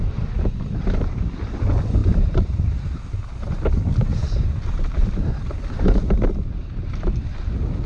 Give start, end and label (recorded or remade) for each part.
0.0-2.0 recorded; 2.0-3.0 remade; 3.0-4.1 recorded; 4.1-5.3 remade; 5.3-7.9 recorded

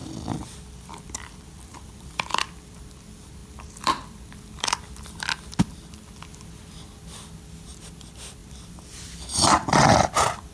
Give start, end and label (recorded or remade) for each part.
0.0-2.8 remade; 2.8-3.4 recorded; 3.4-4.9 remade; 4.9-8.4 recorded; 8.4-10.5 remade

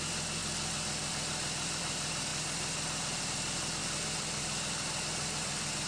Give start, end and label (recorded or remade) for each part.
0.0-0.4 remade; 0.4-1.1 recorded; 1.1-5.9 remade

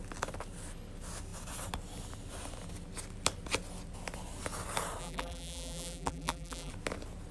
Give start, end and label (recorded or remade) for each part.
0.0-5.0 recorded; 5.0-6.7 remade; 6.7-7.3 recorded

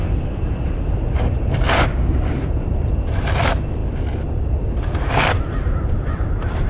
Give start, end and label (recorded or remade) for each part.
0.0-2.9 remade; 2.9-6.7 recorded

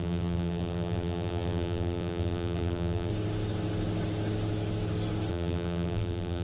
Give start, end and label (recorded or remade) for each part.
0.0-3.1 remade; 3.1-5.3 recorded; 5.3-6.4 remade

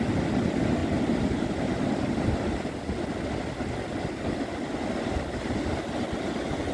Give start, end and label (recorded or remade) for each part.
0.0-6.7 recorded

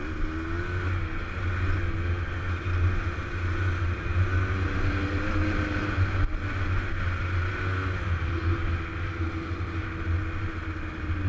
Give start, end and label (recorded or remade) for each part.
0.0-11.3 recorded